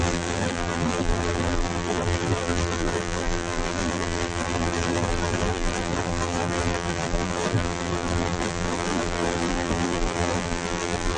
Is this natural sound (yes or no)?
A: no